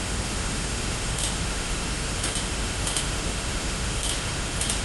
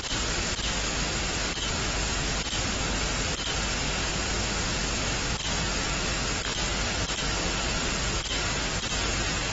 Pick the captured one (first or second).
second